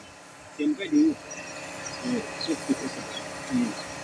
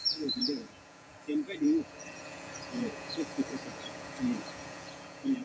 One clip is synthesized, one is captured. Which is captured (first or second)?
first